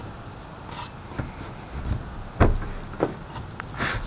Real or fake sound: real